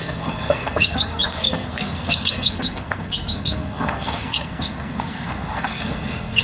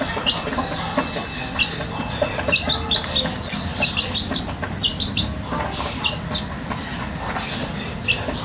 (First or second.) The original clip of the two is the second